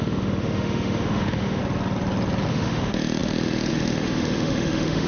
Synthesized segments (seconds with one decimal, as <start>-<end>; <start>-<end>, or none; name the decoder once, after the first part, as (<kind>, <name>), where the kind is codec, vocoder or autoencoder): 0.0-1.6 (autoencoder, DAC-VAE); 2.5-5.1

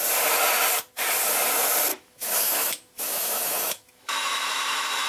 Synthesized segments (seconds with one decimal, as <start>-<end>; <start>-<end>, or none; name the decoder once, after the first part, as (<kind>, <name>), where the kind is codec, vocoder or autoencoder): 1.9-5.1 (autoencoder, DAC-VAE)

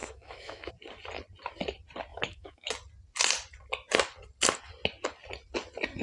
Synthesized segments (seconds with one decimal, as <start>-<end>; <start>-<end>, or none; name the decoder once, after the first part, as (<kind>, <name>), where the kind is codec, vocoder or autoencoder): 0.0-0.7 (autoencoder, DAC-VAE); 2.1-2.7

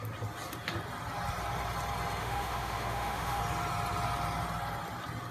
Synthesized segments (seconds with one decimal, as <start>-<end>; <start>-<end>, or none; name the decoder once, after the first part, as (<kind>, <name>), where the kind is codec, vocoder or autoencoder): 2.2-3.4 (autoencoder, DAC-VAE)

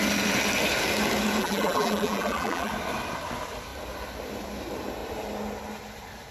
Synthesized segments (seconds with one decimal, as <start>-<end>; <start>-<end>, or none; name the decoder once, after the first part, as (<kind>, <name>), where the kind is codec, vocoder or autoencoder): 1.4-2.7 (vocoder, BigVGAN v2)

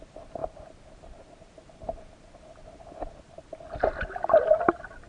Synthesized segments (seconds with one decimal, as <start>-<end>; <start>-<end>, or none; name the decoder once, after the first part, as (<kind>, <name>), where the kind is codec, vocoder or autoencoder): 0.4-1.5 (vocoder, BigVGAN v2)

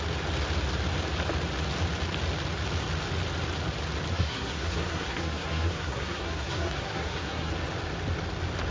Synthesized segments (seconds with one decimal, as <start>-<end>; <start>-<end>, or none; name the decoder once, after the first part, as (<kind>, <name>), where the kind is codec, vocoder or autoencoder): 4.1-7.5 (codec, SNAC)